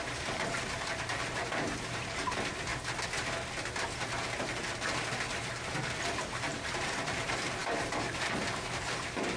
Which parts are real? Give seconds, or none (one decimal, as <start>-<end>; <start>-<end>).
2.7-6.0